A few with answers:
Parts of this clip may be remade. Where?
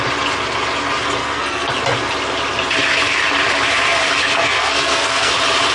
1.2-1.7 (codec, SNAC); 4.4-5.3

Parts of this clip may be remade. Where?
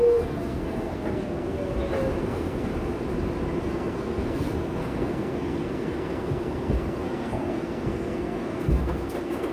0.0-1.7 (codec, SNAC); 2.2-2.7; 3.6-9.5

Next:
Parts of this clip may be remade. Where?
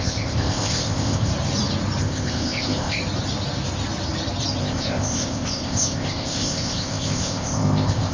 0.0-1.3 (codec, ZipCodec); 2.0-3.0; 4.6-8.1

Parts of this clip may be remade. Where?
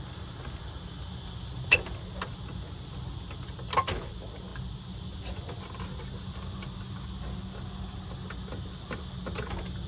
none